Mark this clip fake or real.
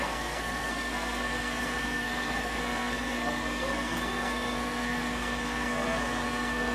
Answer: fake